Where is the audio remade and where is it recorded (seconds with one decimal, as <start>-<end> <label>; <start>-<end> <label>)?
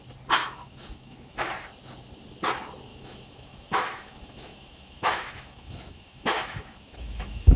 0.0-0.4 recorded; 0.4-1.5 remade; 1.5-2.9 recorded; 2.9-7.6 remade